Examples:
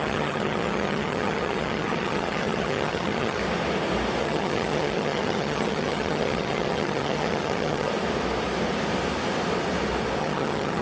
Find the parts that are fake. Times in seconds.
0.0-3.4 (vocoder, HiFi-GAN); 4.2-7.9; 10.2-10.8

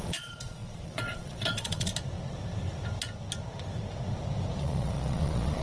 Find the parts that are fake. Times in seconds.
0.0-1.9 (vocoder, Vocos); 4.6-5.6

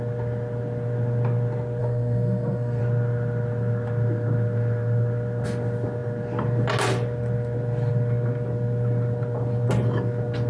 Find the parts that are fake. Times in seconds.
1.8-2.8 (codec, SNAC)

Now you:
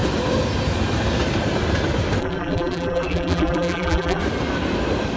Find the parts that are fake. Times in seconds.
2.2-4.2 (vocoder, BigVGAN v2)

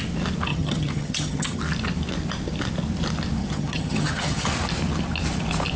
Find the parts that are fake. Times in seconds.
0.5-1.6 (vocoder, HiFi-GAN); 3.4-4.5

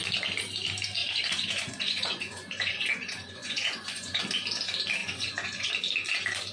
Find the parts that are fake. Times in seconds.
1.0-4.2 (vocoder, Vocos); 5.0-5.7